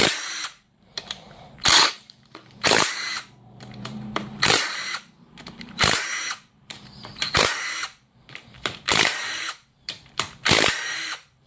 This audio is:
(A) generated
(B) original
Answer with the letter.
A